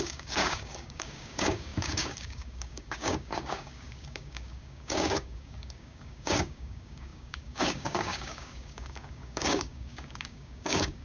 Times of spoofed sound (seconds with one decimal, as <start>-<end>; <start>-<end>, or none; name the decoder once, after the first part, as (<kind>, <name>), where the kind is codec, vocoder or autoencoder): 0.0-11.0 (codec, DAC)